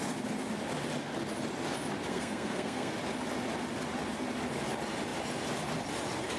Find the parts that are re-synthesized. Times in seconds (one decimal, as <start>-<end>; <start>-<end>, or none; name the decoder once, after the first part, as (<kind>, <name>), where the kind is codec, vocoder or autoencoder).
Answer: 2.1-2.9 (codec, SNAC)

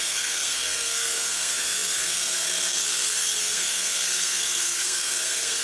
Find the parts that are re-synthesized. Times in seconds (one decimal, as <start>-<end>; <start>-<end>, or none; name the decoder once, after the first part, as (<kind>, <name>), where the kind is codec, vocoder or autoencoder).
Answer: 0.0-5.6 (codec, SNAC)

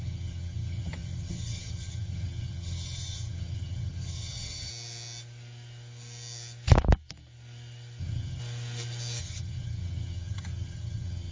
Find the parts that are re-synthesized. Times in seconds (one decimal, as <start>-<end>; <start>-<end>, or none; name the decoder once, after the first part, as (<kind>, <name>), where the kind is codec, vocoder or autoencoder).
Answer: 0.0-4.7 (vocoder, HiFi-GAN); 8.0-8.4; 9.2-11.3

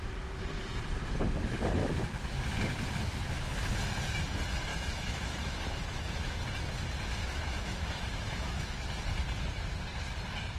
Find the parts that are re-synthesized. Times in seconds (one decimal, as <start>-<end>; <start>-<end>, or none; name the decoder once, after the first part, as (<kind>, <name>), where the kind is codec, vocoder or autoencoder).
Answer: 4.7-6.4 (autoencoder, DAC-VAE); 7.2-8.8

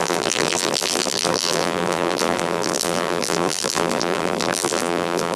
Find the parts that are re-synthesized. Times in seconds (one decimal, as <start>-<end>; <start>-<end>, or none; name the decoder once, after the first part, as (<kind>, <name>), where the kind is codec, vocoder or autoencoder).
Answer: 0.0-5.4 (vocoder, BigVGAN v2)

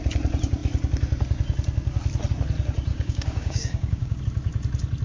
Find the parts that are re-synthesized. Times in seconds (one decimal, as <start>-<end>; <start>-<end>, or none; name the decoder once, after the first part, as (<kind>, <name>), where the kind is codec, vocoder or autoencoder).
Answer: 2.9-4.2 (codec, DAC)

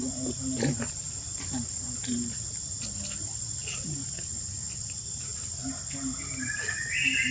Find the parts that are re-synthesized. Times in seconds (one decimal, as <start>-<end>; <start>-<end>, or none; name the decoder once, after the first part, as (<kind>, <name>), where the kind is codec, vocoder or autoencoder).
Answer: none

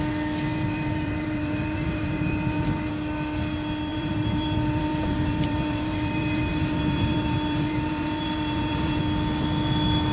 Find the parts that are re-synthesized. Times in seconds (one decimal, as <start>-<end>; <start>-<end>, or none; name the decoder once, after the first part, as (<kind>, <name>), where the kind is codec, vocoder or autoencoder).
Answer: 0.5-2.9 (vocoder, BigVGAN v2); 3.9-9.0